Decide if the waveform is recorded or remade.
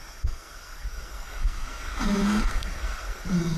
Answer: remade